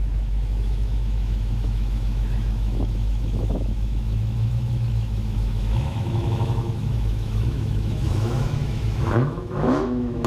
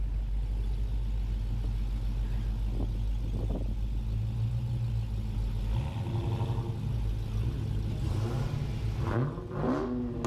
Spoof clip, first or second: first